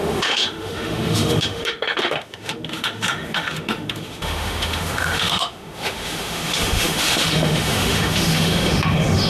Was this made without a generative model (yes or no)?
no